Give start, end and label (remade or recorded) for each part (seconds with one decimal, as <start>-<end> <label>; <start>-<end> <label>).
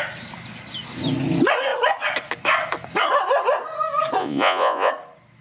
0.0-4.2 recorded; 4.2-4.9 remade; 4.9-5.4 recorded